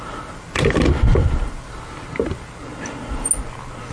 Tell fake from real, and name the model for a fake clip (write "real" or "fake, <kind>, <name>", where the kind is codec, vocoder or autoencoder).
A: real